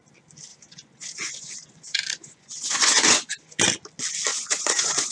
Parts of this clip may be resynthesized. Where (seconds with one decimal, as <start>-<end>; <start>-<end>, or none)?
0.5-3.6; 4.3-5.1